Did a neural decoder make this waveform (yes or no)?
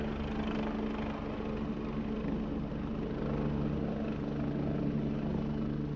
no